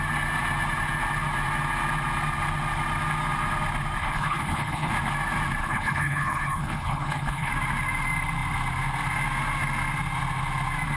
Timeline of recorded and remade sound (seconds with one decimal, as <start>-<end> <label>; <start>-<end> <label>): 0.0-4.0 recorded; 4.0-4.9 remade; 4.9-5.6 recorded; 5.6-7.5 remade; 7.5-11.0 recorded